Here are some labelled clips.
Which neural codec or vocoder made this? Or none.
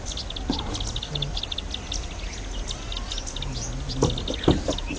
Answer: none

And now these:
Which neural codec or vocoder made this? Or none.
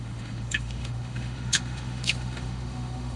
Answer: autoencoder, DAC-VAE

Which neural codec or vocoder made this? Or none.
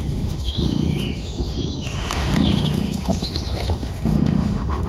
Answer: autoencoder, DAC-VAE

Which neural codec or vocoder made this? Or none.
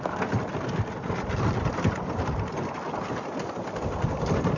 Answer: none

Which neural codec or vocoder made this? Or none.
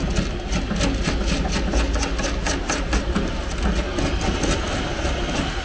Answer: none